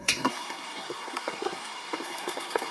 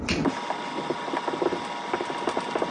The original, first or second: second